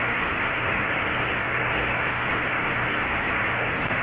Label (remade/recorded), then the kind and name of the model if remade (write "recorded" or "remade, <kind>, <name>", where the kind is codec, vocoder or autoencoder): remade, codec, SNAC